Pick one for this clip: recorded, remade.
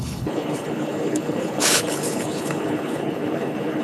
remade